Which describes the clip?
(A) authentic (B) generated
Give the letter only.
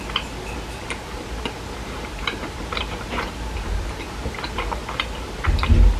A